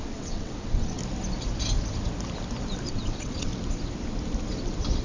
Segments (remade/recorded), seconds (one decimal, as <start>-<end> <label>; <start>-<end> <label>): 0.0-1.0 remade; 1.0-2.9 recorded; 2.9-3.5 remade; 3.5-5.0 recorded